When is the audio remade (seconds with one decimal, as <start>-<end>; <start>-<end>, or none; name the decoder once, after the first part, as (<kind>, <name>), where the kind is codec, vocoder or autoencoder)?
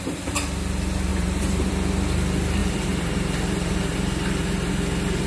1.1-1.7 (vocoder, BigVGAN v2); 2.6-4.7